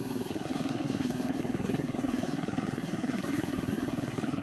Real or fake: fake